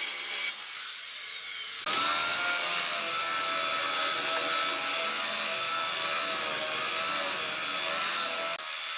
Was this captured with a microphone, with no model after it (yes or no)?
yes